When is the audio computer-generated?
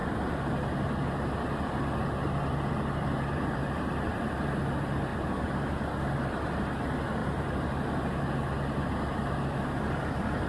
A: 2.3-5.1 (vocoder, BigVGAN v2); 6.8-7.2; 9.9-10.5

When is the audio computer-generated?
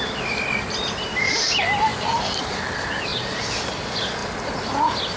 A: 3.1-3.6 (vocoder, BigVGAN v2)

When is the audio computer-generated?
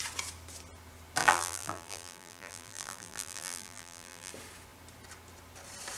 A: 1.2-4.3 (vocoder, BigVGAN v2)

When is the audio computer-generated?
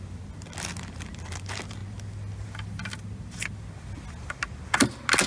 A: none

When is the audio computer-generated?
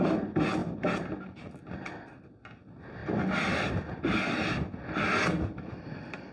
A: 0.6-1.2 (vocoder, BigVGAN v2); 3.0-6.3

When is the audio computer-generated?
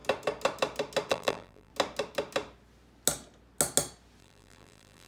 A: 1.1-1.7 (vocoder, BigVGAN v2); 4.2-5.1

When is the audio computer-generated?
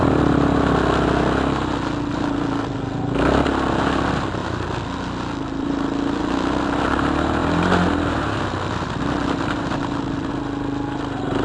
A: 4.4-6.2 (vocoder, BigVGAN v2); 7.4-10.3